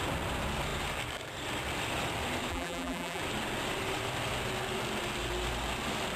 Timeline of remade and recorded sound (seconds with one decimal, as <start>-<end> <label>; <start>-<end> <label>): 0.0-2.5 recorded; 2.5-3.2 remade; 3.2-6.2 recorded